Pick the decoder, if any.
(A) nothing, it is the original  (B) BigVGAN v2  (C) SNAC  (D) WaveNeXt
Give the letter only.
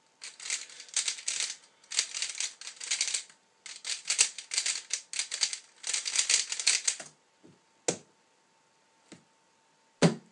A